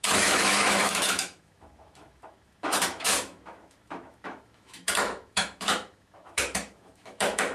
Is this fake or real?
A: fake